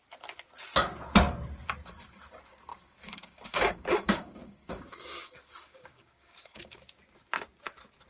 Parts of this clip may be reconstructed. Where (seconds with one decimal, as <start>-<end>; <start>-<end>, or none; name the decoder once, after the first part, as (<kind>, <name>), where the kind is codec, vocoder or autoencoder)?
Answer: 2.7-6.8 (codec, DAC)

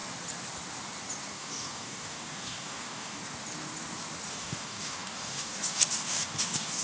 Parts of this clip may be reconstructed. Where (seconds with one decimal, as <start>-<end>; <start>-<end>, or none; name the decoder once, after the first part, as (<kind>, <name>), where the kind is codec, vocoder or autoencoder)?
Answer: 1.3-3.2 (codec, DAC); 4.3-6.8